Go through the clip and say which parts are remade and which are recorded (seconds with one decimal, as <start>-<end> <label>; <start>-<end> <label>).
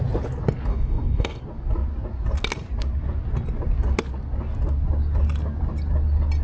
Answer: 0.0-0.7 recorded; 0.7-1.4 remade; 1.4-6.4 recorded